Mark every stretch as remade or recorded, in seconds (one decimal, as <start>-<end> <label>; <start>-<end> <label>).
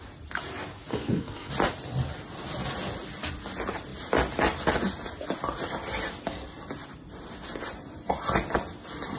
0.0-0.9 recorded; 0.9-1.5 remade; 1.5-9.2 recorded